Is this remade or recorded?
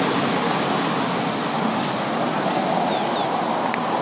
recorded